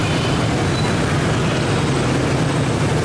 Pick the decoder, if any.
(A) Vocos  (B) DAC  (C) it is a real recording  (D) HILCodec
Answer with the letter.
C